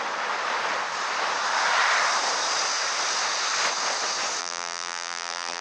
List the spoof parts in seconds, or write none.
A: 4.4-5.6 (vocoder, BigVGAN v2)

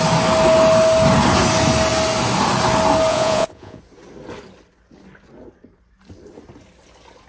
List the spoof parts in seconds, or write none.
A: 3.1-3.8 (vocoder, Vocos)

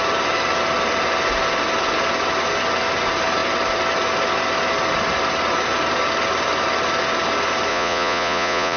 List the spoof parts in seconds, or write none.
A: 7.7-8.8 (vocoder, Vocos)

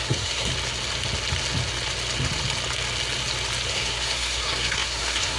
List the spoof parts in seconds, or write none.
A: 0.0-0.5 (codec, SNAC); 3.7-5.4